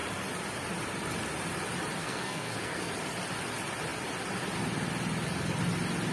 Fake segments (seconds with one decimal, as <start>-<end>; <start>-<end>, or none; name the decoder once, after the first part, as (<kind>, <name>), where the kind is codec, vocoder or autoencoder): 2.0-2.9 (codec, SNAC)